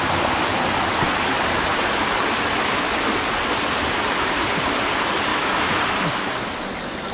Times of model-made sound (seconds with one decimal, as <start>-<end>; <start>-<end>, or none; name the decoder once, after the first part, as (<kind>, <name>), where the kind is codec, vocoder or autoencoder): 5.3-5.8 (autoencoder, DAC-VAE)